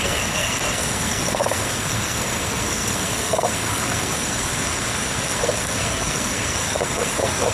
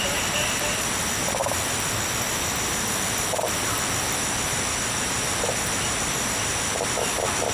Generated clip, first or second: first